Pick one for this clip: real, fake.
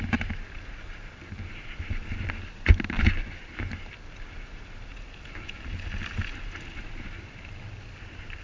real